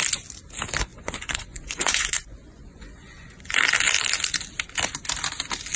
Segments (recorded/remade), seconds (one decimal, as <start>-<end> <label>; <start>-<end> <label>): 0.0-0.9 recorded; 0.9-3.4 remade; 3.4-5.8 recorded